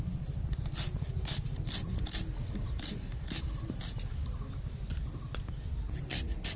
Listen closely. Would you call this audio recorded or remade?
recorded